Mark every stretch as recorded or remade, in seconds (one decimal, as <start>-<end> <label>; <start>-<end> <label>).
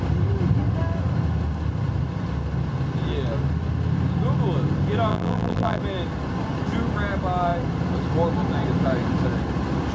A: 0.0-5.1 recorded; 5.1-5.8 remade; 5.8-9.9 recorded